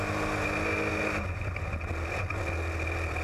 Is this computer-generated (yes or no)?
no